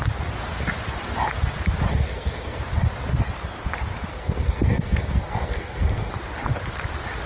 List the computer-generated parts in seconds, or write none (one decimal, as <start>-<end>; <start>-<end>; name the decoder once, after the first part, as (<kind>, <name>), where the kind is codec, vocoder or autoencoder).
1.9-2.6 (codec, SNAC); 4.1-6.1